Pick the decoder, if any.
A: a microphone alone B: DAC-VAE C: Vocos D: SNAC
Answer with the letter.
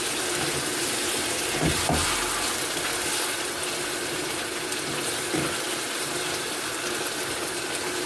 A